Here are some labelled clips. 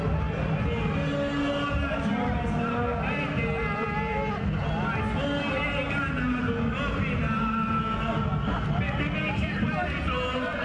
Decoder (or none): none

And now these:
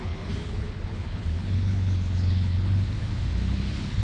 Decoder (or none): codec, HILCodec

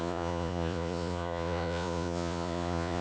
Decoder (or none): vocoder, Vocos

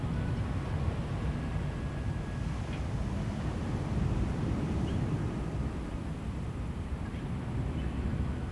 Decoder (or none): none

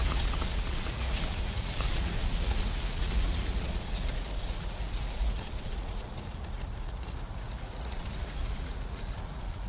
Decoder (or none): vocoder, Vocos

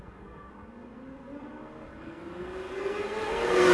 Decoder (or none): codec, SNAC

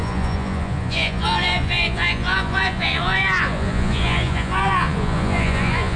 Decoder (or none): vocoder, Vocos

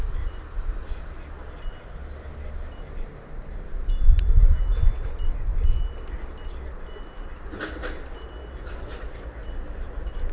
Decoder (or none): none